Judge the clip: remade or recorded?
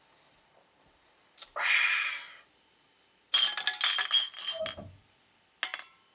recorded